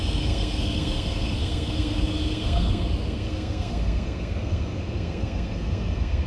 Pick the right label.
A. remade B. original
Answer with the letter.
A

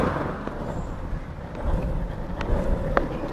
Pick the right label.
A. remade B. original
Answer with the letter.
B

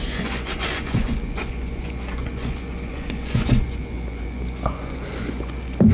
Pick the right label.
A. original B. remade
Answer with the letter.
B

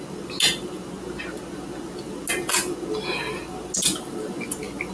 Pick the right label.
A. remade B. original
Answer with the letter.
B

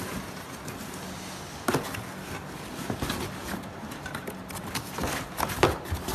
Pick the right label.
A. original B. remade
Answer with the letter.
A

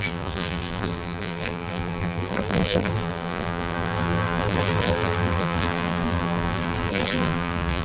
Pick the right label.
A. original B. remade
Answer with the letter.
B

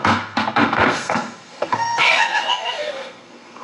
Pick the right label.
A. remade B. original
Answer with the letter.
A